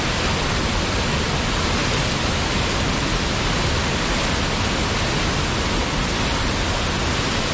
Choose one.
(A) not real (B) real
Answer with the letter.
B